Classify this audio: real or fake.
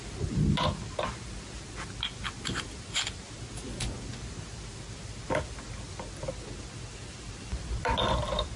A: real